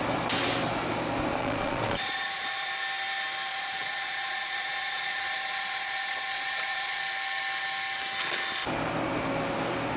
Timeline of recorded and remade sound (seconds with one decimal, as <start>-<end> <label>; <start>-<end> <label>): 0.0-1.4 recorded; 1.4-2.7 remade; 2.7-3.5 recorded; 3.5-7.0 remade; 7.0-10.0 recorded